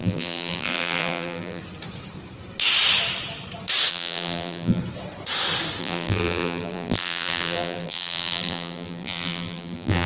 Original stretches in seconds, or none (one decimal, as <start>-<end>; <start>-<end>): 1.6-3.9; 4.8-5.8